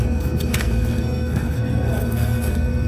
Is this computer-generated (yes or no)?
yes